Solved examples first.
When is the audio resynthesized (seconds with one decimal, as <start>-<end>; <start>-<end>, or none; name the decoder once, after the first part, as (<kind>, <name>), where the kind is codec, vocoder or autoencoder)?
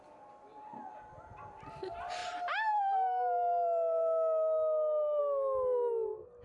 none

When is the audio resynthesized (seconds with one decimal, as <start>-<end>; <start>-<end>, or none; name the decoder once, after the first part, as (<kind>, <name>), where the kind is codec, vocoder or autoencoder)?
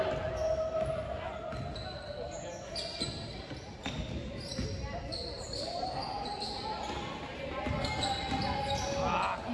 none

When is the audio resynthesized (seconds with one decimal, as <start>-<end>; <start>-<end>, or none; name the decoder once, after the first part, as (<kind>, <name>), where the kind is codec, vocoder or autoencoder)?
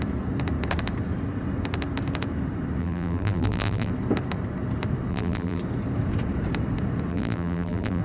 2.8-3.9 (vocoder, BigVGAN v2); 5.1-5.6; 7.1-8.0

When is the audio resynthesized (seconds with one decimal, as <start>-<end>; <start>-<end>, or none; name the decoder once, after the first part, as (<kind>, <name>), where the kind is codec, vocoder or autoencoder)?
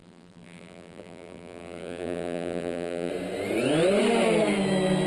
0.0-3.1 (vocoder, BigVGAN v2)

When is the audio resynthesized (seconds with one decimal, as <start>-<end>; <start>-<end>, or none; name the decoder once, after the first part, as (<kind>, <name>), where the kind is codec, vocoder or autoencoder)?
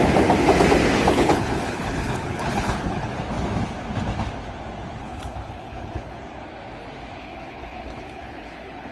1.1-3.1 (codec, HILCodec); 5.0-6.2; 7.2-8.9